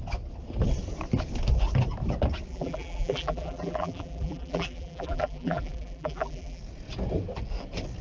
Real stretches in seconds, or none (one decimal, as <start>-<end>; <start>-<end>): 0.0-2.5; 6.6-8.0